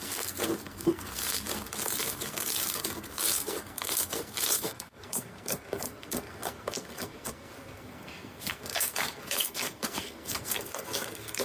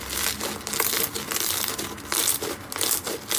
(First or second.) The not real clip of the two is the first